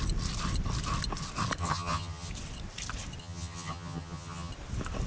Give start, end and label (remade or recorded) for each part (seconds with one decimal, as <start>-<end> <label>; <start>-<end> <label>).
0.0-1.6 recorded; 1.6-2.3 remade; 2.3-3.2 recorded; 3.2-4.5 remade; 4.5-5.1 recorded